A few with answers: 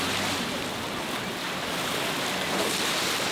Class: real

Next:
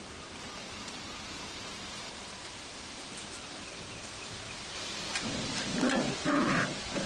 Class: fake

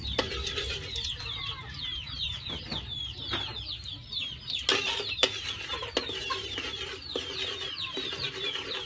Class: real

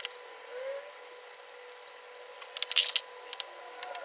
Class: real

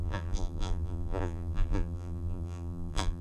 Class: fake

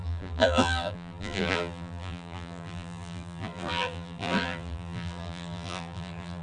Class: fake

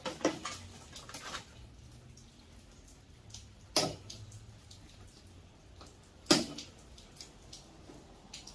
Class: real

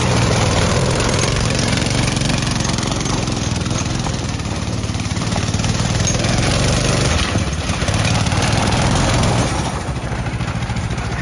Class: fake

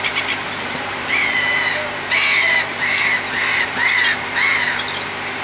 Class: fake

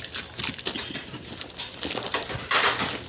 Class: real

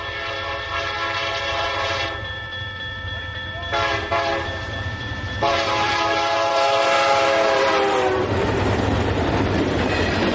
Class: fake